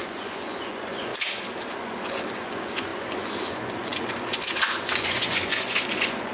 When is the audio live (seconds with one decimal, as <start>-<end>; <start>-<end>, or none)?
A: 1.1-1.7